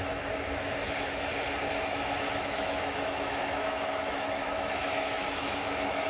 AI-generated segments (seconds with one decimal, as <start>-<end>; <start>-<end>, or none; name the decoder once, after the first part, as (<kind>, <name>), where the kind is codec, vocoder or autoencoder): 0.0-1.3 (autoencoder, DAC-VAE); 2.3-6.1